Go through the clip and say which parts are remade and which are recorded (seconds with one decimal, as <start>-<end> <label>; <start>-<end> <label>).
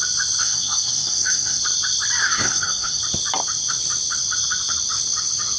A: 0.0-0.4 recorded; 0.4-1.6 remade; 1.6-2.2 recorded; 2.2-3.0 remade; 3.0-5.6 recorded